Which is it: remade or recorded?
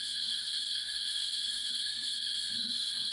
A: remade